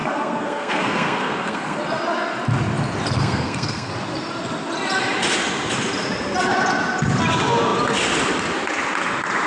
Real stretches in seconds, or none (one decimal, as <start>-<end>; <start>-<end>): 1.8-3.2; 3.9-9.5